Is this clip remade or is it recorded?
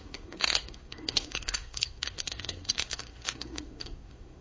remade